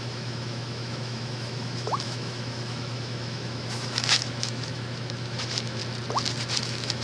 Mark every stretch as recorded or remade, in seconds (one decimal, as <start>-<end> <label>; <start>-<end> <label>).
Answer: 0.0-5.8 remade; 5.8-6.6 recorded; 6.6-7.0 remade

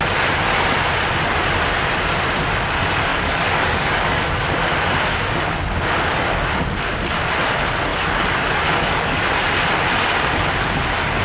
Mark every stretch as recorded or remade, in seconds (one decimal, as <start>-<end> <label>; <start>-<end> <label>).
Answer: 0.0-3.1 recorded; 3.1-4.2 remade; 4.2-7.9 recorded; 7.9-9.3 remade; 9.3-11.2 recorded